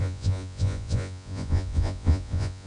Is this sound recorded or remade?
remade